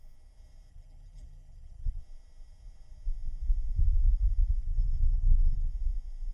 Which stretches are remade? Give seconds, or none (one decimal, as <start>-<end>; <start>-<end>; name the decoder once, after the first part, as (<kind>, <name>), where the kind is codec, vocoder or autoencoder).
0.7-2.0 (vocoder, BigVGAN v2); 4.6-5.7